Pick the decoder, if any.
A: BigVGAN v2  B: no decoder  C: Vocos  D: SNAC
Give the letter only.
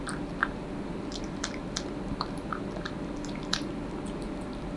B